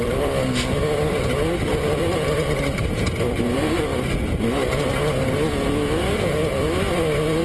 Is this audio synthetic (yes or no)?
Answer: no